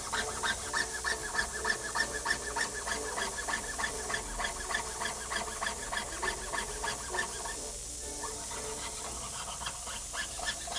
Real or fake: real